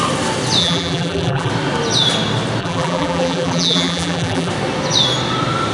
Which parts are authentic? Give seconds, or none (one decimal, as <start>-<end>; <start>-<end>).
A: 0.0-0.6; 1.5-2.6; 4.5-5.7

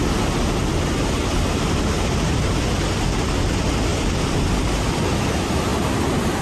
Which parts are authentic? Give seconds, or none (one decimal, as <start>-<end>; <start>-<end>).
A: 0.0-0.6

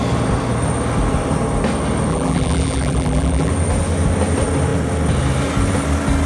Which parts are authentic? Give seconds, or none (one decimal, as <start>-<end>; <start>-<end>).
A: 0.0-2.1; 3.5-6.3

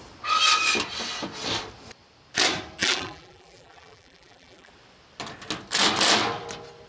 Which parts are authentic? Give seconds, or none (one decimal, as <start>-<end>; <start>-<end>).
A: 0.0-2.8; 4.7-6.9

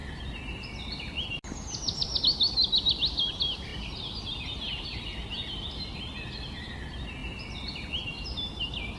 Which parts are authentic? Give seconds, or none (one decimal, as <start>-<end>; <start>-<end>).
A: 0.0-3.7; 4.2-9.0